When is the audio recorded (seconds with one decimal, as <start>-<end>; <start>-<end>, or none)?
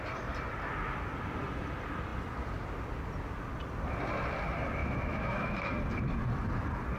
0.0-4.8; 5.7-7.0